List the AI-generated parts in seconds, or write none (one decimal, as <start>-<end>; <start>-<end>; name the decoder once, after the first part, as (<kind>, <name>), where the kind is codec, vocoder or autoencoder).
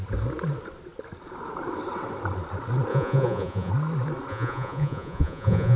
2.9-3.7 (vocoder, Vocos); 4.3-5.8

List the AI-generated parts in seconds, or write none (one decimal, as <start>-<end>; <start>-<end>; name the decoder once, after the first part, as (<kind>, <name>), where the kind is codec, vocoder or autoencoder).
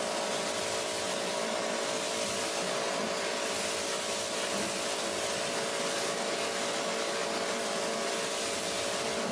none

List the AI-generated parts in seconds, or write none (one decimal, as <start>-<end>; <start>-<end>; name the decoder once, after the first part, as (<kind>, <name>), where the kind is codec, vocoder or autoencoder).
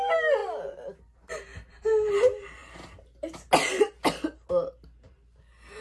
none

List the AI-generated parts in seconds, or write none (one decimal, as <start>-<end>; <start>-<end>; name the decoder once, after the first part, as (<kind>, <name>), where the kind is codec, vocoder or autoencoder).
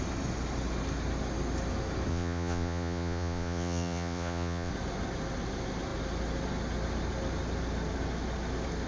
2.1-4.7 (vocoder, Vocos)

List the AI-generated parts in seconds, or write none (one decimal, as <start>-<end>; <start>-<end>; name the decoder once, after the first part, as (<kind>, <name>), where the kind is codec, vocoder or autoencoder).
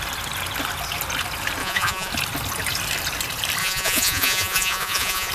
1.6-2.1 (vocoder, Vocos); 3.6-5.3